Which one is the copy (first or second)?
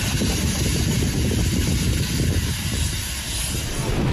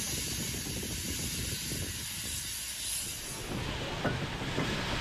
first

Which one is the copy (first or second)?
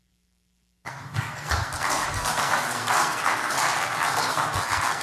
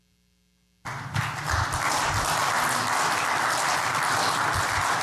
first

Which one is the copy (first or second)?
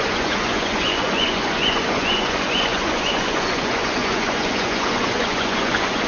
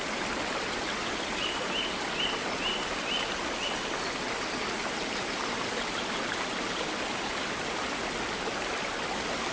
first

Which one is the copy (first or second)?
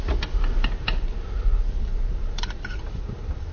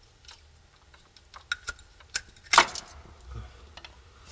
first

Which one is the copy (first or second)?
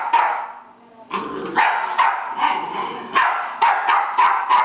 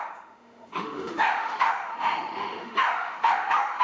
second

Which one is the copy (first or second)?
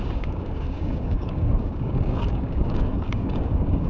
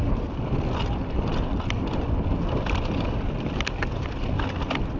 first